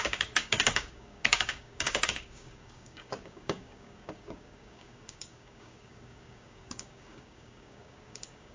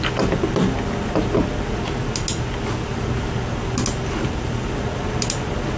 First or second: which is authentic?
second